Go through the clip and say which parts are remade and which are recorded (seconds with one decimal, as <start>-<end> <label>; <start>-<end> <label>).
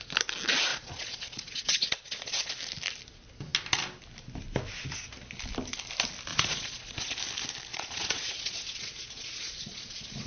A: 0.0-0.7 recorded; 0.7-2.5 remade; 2.5-6.3 recorded; 6.3-7.2 remade; 7.2-7.7 recorded; 7.7-10.3 remade